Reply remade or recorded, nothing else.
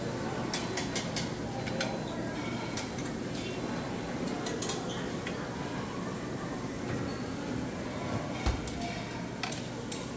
recorded